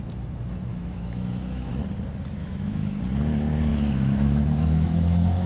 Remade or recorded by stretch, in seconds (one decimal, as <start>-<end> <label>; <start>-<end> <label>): 0.0-0.7 recorded; 0.7-1.7 remade; 1.7-2.4 recorded; 2.4-3.0 remade; 3.0-3.7 recorded; 3.7-5.5 remade